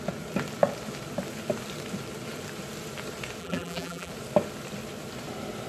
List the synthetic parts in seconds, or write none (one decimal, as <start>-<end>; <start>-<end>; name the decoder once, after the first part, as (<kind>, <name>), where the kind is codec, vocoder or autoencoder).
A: 3.4-4.1 (vocoder, BigVGAN v2)